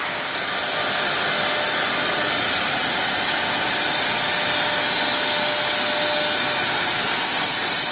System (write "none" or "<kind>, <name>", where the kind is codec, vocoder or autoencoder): none